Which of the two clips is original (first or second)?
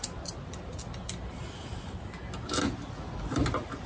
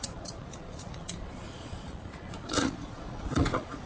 first